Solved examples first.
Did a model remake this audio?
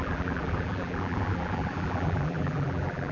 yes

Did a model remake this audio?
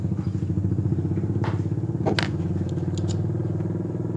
no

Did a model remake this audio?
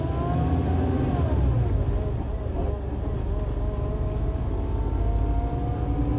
no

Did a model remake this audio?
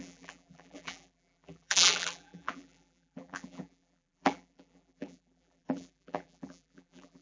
yes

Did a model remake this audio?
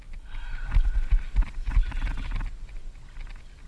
no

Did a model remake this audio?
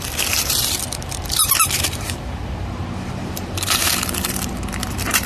yes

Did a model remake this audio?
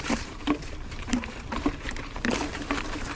yes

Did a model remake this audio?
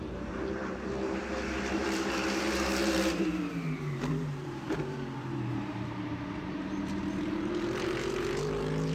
yes